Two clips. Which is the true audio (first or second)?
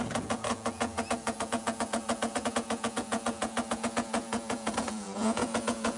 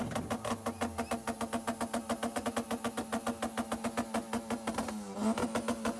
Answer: second